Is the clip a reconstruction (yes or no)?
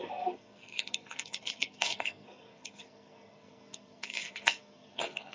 yes